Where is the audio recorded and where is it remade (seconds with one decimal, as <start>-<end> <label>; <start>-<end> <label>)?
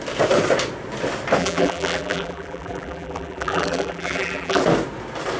0.0-1.4 recorded; 1.4-4.6 remade; 4.6-5.4 recorded